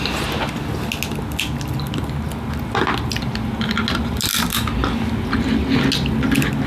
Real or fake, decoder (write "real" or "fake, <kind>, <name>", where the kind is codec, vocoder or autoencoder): real